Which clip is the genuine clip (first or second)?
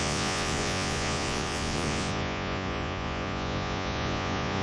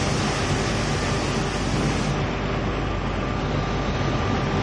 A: second